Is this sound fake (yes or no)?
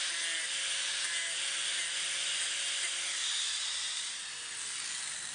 no